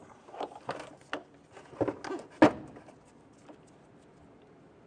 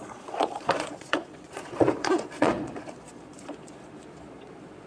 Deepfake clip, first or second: second